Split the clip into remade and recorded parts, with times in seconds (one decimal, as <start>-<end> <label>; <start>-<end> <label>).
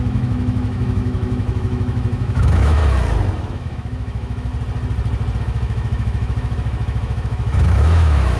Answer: 0.0-2.8 remade; 2.8-3.4 recorded; 3.4-4.5 remade; 4.5-5.4 recorded; 5.4-8.4 remade